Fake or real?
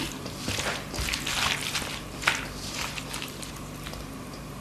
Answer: real